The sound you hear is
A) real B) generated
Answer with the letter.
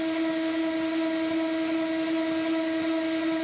A